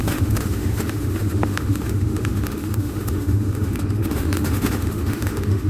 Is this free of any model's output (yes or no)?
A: no